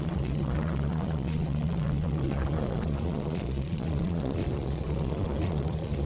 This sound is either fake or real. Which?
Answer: fake